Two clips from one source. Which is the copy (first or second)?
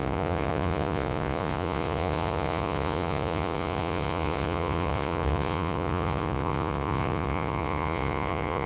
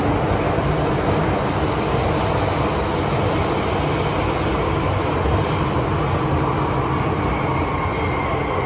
first